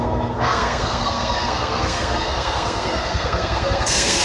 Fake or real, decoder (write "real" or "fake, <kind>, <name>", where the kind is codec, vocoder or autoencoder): fake, codec, SNAC